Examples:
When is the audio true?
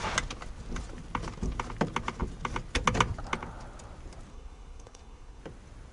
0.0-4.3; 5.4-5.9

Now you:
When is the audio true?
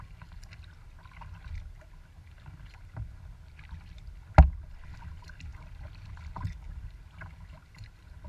0.0-8.3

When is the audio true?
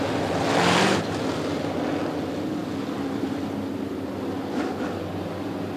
0.0-5.8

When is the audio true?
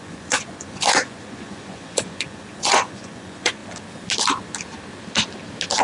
3.6-5.8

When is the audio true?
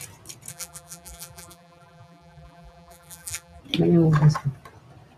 0.0-0.5; 3.6-5.2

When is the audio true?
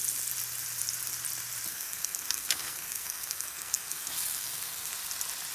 0.0-1.7; 4.9-5.5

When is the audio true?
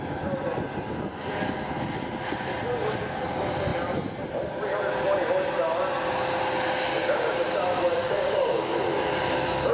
0.0-6.9; 8.7-9.7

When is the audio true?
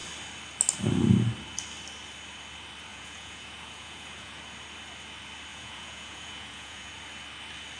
0.0-2.9; 4.4-5.5; 6.9-7.8